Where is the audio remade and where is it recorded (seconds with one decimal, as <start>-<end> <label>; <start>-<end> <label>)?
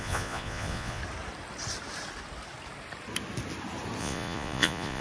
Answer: 0.0-1.0 remade; 1.0-4.0 recorded; 4.0-5.0 remade